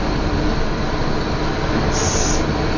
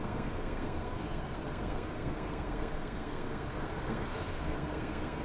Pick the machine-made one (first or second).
second